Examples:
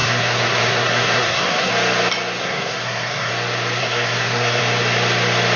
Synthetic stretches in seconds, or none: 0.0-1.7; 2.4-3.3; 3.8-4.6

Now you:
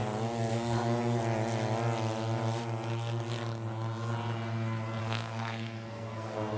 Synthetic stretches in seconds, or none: 0.5-1.2; 5.0-6.6

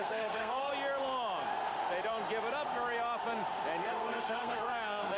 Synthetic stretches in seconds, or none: 0.0-0.7; 3.8-5.2

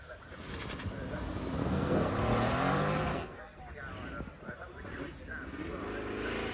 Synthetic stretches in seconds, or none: 1.6-2.1; 3.1-3.6